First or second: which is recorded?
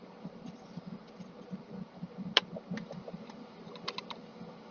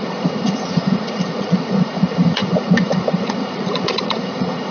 first